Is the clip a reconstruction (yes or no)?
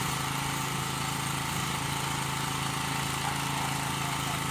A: no